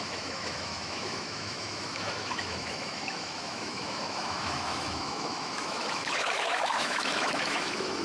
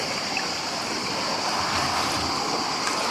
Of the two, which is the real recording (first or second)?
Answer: second